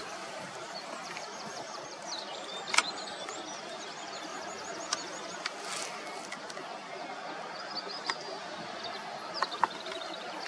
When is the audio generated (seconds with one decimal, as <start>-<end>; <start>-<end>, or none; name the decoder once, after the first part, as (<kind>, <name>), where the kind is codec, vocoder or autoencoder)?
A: 0.0-4.3 (vocoder, BigVGAN v2); 9.3-10.5